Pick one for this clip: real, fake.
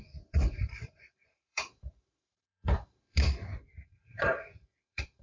fake